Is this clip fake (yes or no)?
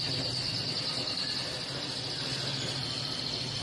no